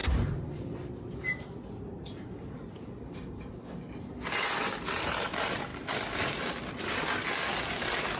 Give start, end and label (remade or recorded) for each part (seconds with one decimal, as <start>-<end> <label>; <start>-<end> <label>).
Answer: 0.0-1.4 remade; 1.4-1.9 recorded; 1.9-3.5 remade; 3.5-8.2 recorded